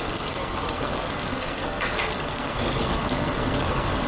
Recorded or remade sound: remade